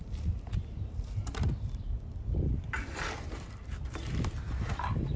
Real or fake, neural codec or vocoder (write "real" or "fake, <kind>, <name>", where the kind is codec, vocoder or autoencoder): fake, vocoder, BigVGAN v2